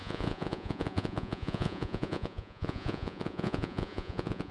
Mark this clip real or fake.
fake